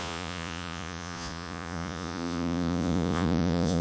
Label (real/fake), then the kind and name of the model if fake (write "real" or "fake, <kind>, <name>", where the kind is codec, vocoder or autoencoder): fake, vocoder, Vocos